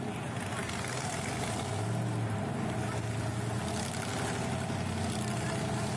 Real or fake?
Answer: real